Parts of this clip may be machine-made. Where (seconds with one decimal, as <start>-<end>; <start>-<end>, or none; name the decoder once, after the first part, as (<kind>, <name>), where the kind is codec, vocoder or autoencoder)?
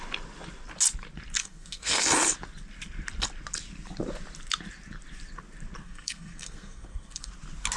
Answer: 1.4-2.0 (codec, SNAC); 5.8-7.3